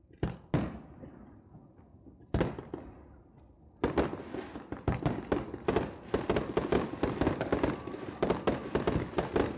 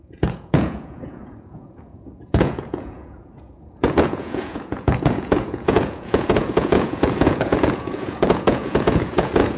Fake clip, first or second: second